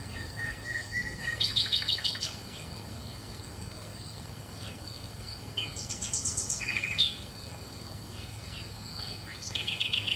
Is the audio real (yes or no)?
no